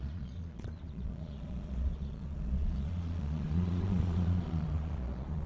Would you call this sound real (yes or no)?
no